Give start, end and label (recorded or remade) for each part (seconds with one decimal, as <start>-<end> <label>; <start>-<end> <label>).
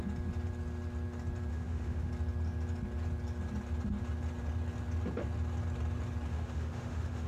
0.0-1.5 recorded; 1.5-2.1 remade; 2.1-6.3 recorded; 6.3-7.3 remade